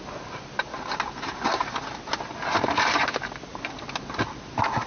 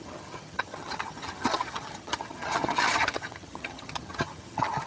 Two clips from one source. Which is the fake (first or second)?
second